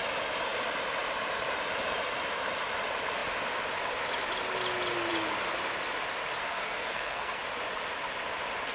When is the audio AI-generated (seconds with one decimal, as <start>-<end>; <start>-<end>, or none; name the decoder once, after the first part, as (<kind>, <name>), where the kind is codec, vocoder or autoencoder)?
6.4-7.4 (codec, SNAC)

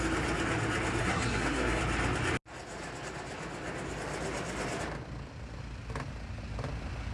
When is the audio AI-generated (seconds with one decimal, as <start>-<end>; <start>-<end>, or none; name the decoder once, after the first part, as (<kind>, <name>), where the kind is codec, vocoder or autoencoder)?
1.0-1.8 (codec, SNAC)

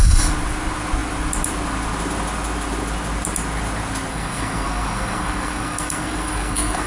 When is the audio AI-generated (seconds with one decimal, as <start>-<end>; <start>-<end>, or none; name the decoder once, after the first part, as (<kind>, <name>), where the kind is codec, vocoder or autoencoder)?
4.1-6.9 (codec, SNAC)

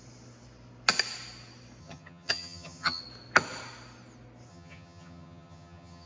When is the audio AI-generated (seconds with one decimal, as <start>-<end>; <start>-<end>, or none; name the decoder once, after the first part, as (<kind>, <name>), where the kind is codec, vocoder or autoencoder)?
1.8-3.0 (vocoder, HiFi-GAN); 4.5-6.1